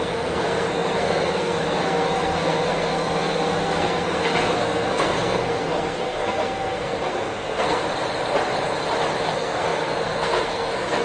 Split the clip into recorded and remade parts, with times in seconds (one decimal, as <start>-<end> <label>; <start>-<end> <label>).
0.0-7.8 remade; 7.8-9.2 recorded; 9.2-11.0 remade